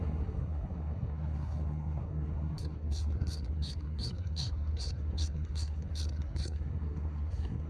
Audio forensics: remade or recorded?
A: remade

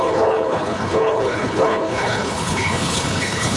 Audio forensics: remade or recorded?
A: remade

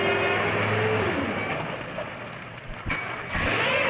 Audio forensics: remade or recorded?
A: recorded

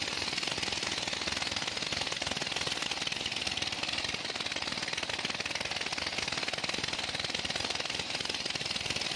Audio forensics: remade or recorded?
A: recorded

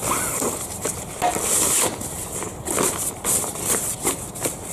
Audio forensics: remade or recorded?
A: recorded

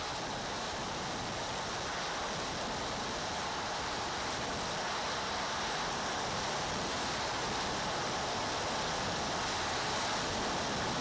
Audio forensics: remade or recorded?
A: recorded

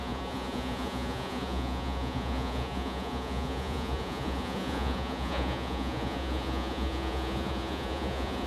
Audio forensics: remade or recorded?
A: remade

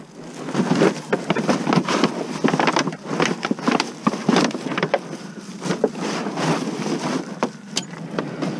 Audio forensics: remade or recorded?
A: recorded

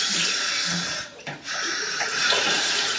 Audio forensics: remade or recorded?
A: remade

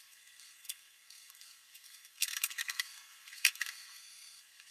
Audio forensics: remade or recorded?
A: remade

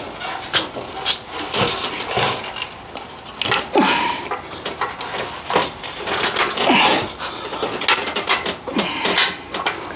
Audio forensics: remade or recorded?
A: recorded